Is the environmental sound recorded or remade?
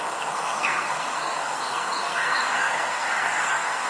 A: remade